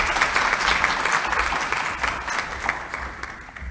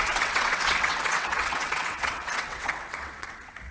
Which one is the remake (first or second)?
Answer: second